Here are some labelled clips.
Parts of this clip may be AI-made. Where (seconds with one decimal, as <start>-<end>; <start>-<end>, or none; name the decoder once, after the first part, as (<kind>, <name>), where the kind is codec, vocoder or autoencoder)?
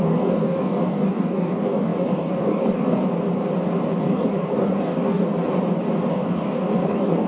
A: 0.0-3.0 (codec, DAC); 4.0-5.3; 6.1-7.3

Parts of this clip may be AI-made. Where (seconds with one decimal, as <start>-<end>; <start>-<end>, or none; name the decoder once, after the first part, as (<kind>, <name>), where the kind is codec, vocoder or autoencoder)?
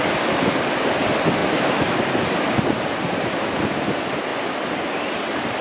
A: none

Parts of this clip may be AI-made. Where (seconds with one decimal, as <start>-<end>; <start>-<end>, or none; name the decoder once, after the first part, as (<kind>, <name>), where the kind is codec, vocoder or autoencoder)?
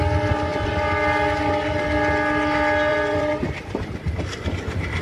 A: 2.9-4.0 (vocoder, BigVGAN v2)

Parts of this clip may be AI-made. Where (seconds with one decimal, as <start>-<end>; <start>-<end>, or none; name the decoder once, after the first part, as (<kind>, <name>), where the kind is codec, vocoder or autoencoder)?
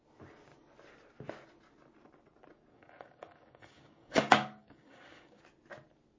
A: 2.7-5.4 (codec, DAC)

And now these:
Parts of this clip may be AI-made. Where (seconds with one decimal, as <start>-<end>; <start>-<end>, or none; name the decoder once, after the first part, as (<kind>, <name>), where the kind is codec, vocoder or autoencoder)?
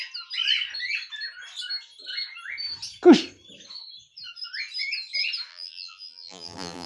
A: 5.5-6.9 (vocoder, BigVGAN v2)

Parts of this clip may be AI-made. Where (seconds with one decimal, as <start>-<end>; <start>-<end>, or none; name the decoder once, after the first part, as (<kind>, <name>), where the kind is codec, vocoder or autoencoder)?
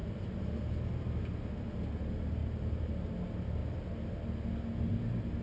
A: 0.0-1.2 (vocoder, BigVGAN v2); 2.4-3.2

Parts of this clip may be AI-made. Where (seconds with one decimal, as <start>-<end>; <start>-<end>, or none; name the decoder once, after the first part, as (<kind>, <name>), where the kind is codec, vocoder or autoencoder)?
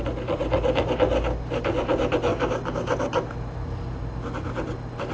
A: none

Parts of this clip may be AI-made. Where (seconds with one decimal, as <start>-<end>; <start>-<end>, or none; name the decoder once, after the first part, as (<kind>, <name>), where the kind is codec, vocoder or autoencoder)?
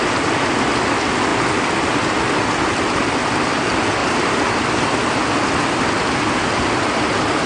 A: none